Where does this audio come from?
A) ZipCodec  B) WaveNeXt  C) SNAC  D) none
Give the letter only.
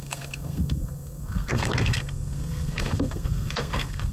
C